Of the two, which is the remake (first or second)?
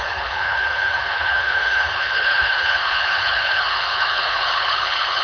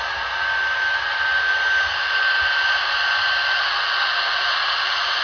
first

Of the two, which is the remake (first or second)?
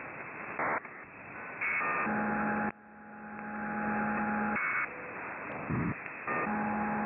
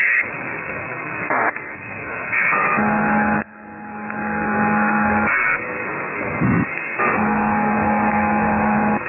second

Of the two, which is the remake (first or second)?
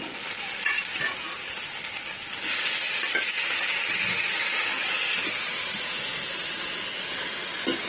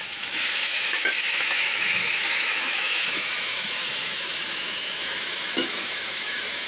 second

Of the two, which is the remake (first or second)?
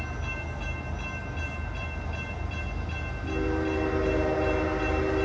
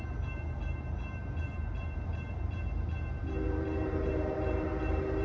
second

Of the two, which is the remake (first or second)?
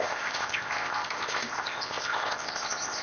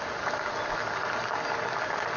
first